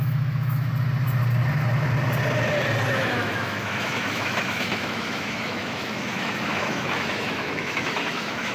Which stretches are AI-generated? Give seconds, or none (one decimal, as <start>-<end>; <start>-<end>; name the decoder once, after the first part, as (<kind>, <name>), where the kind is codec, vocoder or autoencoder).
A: 0.0-0.7 (autoencoder, DAC-VAE); 2.9-8.5